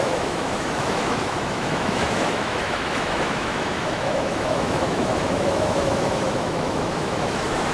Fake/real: fake